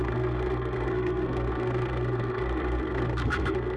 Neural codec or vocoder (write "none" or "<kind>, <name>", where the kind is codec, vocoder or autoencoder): codec, SNAC